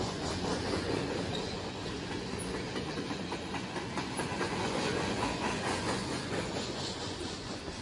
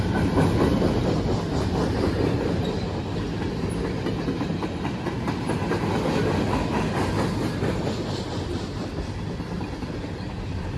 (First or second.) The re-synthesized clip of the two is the first